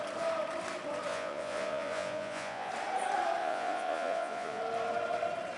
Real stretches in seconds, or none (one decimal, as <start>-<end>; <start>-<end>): 0.0-1.1; 2.7-3.4; 4.6-5.6